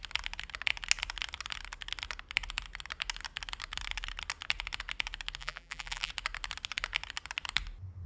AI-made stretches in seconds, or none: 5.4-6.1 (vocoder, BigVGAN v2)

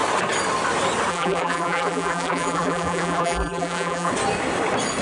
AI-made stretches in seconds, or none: 1.1-4.1 (vocoder, BigVGAN v2)

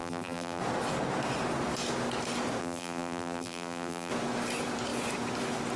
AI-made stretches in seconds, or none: 0.0-0.6 (vocoder, BigVGAN v2); 2.6-4.1